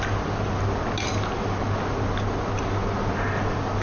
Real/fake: real